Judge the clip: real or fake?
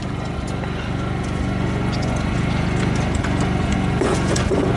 fake